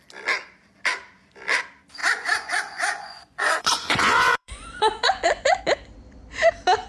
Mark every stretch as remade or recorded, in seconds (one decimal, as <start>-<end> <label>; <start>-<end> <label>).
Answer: 0.0-2.0 recorded; 2.0-5.6 remade; 5.6-6.9 recorded